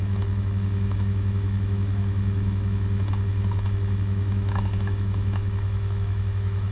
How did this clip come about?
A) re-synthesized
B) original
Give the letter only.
A